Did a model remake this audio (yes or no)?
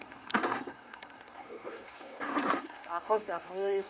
yes